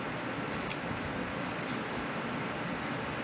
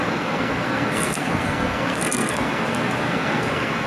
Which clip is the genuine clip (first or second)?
first